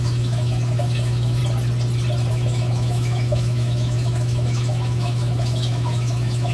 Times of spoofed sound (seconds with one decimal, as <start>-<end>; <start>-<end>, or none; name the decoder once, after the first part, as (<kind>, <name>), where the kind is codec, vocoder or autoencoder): 0.0-1.4 (autoencoder, DAC-VAE); 2.3-6.5